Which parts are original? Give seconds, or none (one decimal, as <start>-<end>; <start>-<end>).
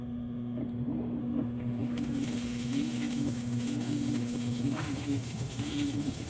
0.6-1.2